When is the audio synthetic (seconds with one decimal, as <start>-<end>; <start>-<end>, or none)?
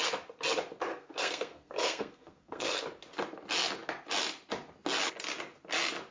0.9-2.8